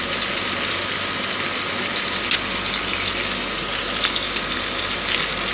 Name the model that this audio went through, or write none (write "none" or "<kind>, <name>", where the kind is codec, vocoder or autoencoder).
none